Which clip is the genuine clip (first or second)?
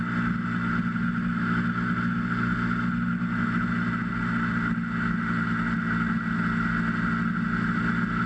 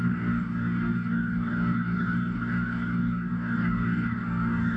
first